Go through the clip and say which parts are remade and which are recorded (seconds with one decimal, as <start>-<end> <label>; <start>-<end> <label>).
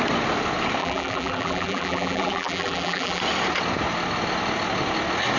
0.0-0.8 recorded; 0.8-3.2 remade; 3.2-5.4 recorded